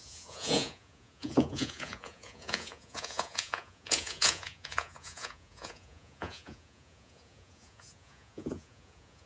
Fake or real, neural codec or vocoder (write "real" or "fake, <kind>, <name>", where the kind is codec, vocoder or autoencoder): fake, vocoder, Vocos